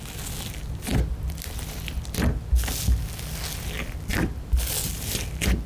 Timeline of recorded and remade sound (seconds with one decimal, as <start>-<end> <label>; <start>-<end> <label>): 0.0-0.9 recorded; 0.9-2.0 remade; 2.0-4.1 recorded; 4.1-4.9 remade; 4.9-5.7 recorded